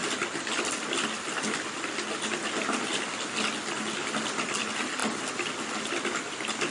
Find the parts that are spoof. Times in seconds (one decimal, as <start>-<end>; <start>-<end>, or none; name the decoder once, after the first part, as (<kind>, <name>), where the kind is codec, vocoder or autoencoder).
none